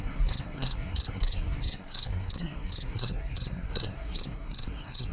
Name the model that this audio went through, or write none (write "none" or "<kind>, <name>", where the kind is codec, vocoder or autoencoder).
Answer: codec, SNAC